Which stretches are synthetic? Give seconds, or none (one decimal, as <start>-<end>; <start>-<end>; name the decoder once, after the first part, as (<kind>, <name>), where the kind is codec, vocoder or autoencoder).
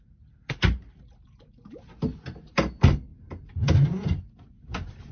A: none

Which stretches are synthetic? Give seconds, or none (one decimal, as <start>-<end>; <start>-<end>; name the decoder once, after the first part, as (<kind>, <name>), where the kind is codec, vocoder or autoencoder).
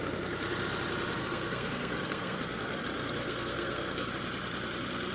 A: 1.2-2.8 (codec, SNAC); 3.2-4.1